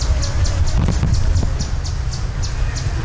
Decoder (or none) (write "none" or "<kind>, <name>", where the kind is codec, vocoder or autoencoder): none